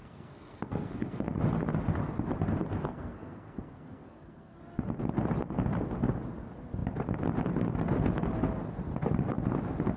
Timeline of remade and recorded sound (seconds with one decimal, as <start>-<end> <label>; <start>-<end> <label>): 0.0-1.4 remade; 1.4-2.9 recorded; 2.9-4.6 remade; 4.6-10.0 recorded